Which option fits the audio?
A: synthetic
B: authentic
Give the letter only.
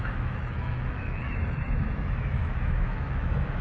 A